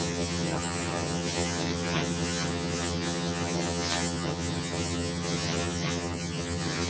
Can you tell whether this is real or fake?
fake